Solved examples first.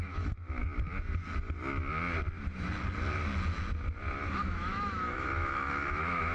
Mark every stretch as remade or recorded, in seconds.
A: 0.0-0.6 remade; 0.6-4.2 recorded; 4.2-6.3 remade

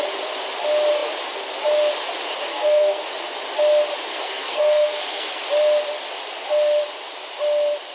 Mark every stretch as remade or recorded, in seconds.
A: 0.0-2.5 recorded; 2.5-3.1 remade; 3.1-4.1 recorded; 4.1-5.4 remade; 5.4-7.9 recorded

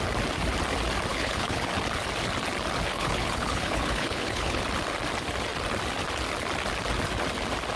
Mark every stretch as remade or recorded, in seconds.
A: 0.0-1.1 recorded; 1.1-1.7 remade; 1.7-2.9 recorded; 2.9-4.6 remade; 4.6-7.8 recorded

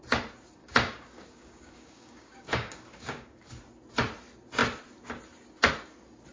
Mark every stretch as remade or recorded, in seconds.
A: 0.0-0.6 recorded; 0.6-3.5 remade; 3.5-6.3 recorded

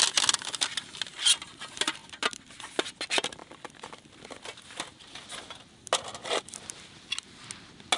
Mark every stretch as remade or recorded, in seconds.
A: 0.0-8.0 recorded